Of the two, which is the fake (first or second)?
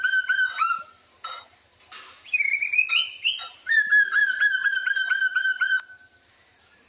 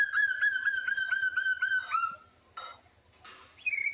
first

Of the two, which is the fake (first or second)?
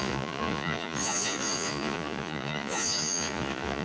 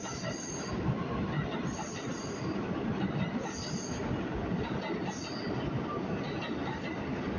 first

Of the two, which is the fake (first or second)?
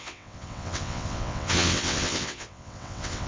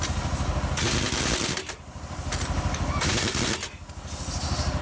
first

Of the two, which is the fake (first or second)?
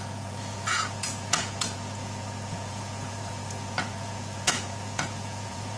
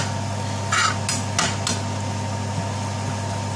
first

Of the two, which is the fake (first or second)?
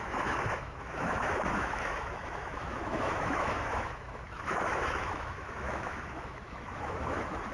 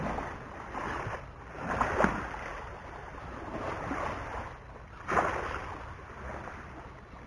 first